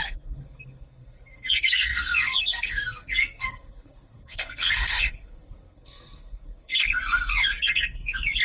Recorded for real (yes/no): no